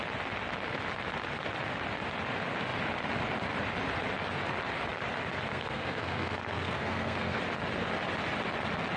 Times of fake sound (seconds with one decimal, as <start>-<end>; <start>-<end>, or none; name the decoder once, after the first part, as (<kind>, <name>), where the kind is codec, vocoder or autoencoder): 5.5-7.4 (codec, SNAC)